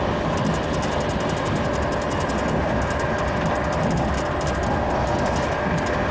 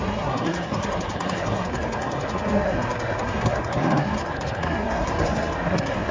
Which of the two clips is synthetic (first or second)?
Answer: second